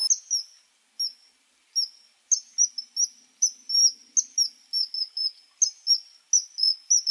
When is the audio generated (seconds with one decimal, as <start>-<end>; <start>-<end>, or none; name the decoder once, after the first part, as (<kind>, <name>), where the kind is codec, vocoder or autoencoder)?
none